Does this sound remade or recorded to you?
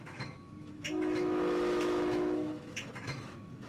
remade